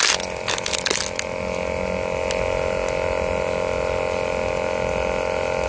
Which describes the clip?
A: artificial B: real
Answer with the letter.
B